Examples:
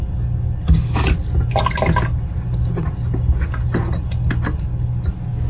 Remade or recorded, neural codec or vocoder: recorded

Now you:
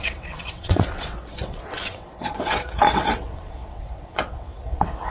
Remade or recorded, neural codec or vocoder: remade, vocoder, WaveNeXt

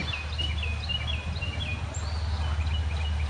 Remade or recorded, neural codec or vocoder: recorded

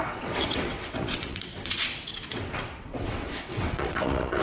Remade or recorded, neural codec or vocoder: remade, vocoder, WaveNeXt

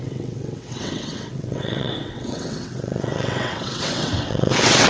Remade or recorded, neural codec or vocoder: remade, vocoder, WaveNeXt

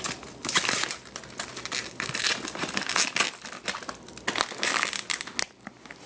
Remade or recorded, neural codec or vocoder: recorded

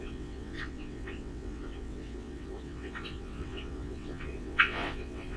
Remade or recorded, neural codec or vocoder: remade, vocoder, WaveNeXt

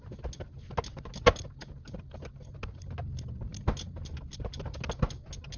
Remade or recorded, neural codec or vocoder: recorded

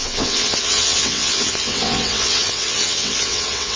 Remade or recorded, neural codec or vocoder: remade, vocoder, WaveNeXt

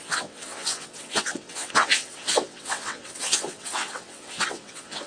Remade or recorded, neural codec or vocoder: remade, vocoder, WaveNeXt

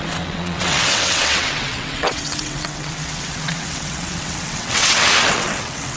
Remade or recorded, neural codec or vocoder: remade, vocoder, WaveNeXt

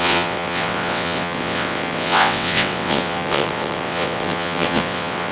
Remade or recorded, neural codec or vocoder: remade, vocoder, WaveNeXt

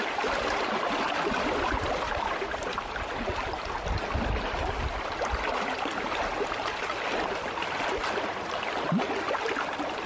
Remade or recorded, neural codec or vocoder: recorded